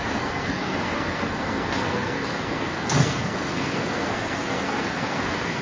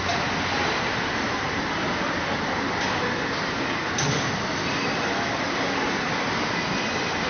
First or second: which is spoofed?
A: first